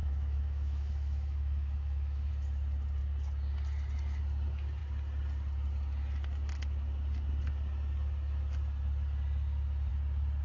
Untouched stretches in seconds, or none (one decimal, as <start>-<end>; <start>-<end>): 2.3-10.4